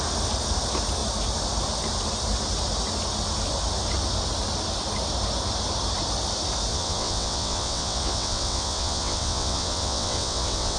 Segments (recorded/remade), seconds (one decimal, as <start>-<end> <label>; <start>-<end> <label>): 0.0-6.7 recorded; 6.7-10.8 remade